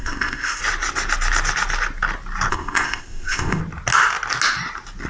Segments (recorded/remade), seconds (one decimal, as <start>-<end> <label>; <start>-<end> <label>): 0.0-0.6 remade; 0.6-2.5 recorded; 2.5-3.6 remade; 3.6-5.1 recorded